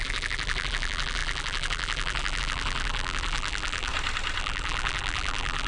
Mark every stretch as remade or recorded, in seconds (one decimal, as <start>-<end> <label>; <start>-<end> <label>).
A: 0.0-3.9 remade; 3.9-4.4 recorded; 4.4-5.7 remade